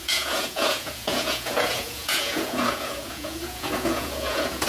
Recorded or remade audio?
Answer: remade